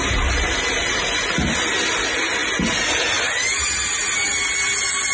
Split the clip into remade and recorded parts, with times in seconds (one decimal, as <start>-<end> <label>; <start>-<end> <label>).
0.0-5.1 recorded